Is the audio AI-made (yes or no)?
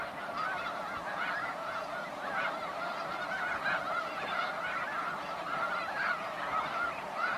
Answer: no